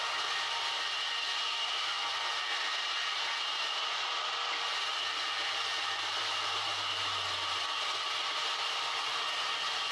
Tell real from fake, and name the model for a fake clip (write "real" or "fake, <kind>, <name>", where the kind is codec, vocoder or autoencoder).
real